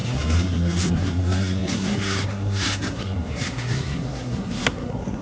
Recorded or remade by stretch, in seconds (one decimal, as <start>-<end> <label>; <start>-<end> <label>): 0.0-5.2 remade